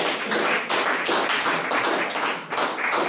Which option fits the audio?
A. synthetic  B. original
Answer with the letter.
B